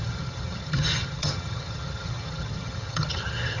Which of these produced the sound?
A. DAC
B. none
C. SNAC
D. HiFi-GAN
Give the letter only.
D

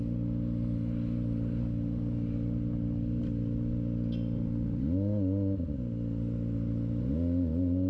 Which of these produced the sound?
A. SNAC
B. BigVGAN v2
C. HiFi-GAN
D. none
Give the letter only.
D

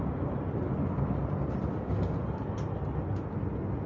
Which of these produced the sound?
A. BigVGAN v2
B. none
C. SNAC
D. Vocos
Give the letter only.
B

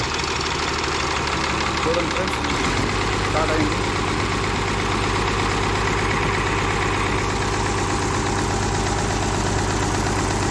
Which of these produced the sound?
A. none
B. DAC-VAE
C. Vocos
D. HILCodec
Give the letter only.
A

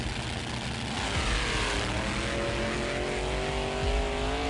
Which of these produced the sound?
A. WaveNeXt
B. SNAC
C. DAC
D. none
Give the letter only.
D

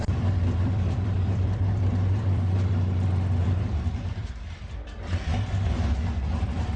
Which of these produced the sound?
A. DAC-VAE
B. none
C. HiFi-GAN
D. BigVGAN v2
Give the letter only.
D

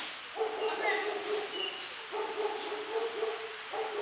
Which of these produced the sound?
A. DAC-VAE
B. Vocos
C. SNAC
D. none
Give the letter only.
D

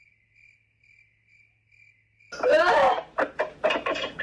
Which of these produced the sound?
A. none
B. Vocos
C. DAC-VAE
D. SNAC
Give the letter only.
A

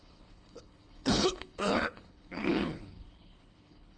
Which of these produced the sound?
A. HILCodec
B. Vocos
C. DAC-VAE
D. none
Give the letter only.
A